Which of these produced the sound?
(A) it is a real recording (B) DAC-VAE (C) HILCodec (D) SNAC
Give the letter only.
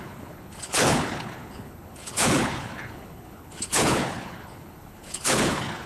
C